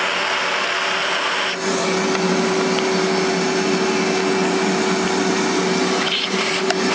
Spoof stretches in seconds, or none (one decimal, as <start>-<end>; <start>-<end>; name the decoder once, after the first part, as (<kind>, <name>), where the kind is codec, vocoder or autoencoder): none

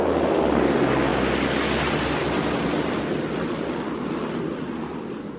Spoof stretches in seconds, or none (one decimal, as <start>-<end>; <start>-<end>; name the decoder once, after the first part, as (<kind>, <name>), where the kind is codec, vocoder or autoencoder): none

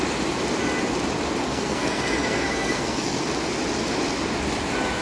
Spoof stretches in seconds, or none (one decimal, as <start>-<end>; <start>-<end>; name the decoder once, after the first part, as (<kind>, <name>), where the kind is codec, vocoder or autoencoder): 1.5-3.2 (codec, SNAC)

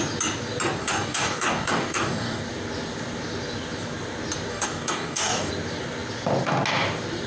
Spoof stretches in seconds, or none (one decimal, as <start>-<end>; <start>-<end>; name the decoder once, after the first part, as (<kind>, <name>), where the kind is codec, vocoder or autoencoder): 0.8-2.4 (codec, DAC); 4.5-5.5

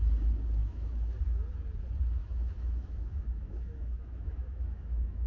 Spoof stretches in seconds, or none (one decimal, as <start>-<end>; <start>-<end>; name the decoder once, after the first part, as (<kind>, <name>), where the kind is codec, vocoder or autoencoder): 0.6-1.1 (autoencoder, DAC-VAE); 2.2-5.3

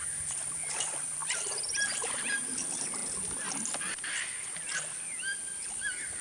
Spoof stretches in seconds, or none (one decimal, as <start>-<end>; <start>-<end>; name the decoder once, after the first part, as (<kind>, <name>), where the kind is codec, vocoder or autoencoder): 0.0-3.0 (vocoder, BigVGAN v2); 5.8-6.2

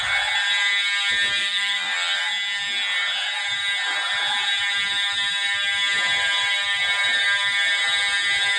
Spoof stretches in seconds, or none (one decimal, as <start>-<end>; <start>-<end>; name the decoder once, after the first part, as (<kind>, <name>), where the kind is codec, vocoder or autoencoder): 1.4-2.3 (vocoder, BigVGAN v2)